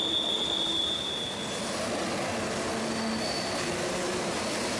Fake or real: real